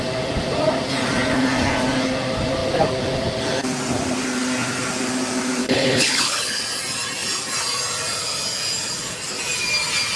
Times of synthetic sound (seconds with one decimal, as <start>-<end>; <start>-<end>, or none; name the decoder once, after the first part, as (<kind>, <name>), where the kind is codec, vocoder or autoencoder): 5.6-6.6 (codec, HILCodec)